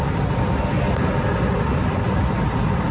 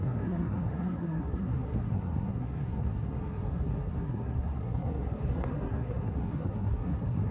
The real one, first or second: first